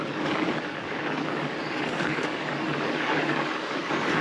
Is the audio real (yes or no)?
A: no